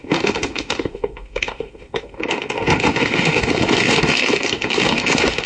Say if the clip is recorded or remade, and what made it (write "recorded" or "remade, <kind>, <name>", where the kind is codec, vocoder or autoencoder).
remade, autoencoder, DAC-VAE